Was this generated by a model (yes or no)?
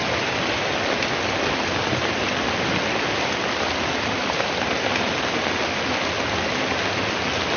no